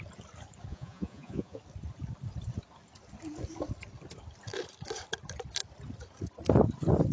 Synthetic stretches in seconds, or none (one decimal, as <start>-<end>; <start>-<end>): 0.7-1.6